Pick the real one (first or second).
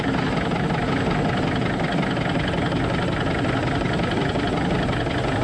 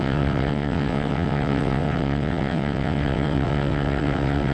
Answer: first